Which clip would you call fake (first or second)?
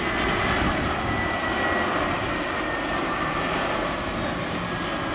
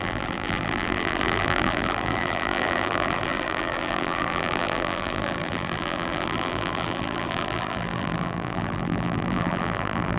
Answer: second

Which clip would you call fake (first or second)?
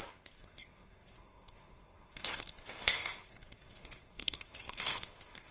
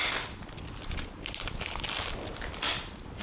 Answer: first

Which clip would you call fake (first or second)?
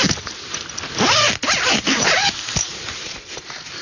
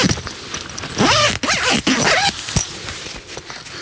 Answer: first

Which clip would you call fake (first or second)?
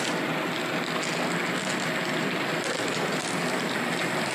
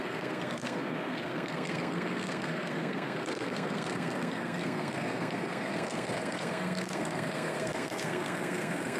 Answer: second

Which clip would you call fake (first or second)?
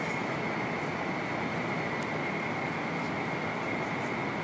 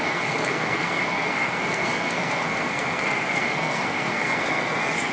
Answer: second